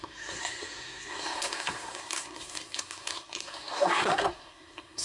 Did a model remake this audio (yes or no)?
yes